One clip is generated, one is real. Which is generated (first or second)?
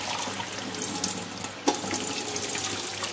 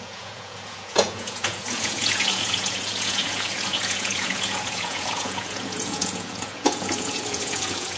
second